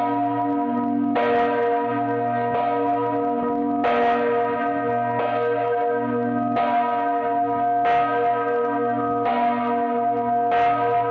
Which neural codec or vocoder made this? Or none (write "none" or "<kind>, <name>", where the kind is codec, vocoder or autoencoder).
none